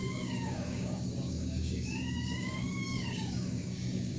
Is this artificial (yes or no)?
yes